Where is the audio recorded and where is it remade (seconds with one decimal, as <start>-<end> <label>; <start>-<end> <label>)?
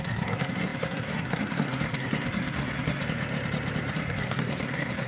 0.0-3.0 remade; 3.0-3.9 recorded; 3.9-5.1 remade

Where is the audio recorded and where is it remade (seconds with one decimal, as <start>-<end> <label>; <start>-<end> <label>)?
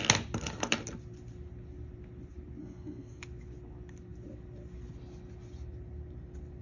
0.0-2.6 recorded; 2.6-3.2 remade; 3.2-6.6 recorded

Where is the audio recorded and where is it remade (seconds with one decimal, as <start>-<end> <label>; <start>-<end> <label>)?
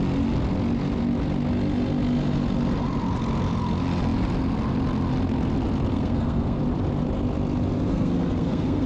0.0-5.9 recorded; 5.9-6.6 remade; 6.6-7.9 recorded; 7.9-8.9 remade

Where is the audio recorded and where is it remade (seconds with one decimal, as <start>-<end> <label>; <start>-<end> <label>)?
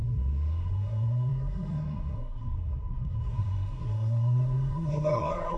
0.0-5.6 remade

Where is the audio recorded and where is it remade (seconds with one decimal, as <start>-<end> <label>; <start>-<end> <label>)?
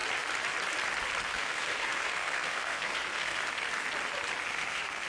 0.0-1.2 recorded; 1.2-3.4 remade; 3.4-4.4 recorded; 4.4-5.1 remade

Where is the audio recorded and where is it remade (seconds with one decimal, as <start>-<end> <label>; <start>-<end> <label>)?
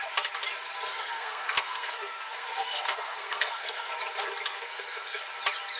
0.0-0.9 recorded; 0.9-3.9 remade; 3.9-4.5 recorded; 4.5-5.2 remade; 5.2-5.8 recorded